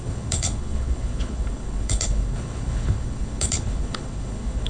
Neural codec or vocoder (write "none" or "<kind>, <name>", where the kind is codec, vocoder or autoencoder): codec, HILCodec